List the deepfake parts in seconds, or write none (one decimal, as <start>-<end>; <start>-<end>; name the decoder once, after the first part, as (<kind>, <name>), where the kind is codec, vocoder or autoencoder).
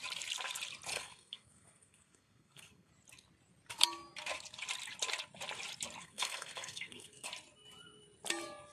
0.9-2.9 (codec, SNAC); 6.0-7.3